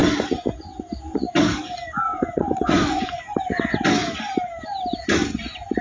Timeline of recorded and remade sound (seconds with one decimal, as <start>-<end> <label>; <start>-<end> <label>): 0.0-2.1 recorded; 2.1-3.2 remade; 3.2-5.8 recorded